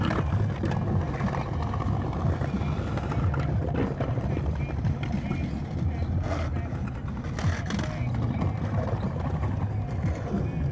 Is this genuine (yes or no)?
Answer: yes